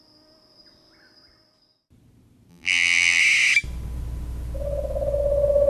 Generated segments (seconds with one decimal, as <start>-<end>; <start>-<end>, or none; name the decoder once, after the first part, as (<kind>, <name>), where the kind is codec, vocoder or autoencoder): 2.5-3.2 (vocoder, BigVGAN v2)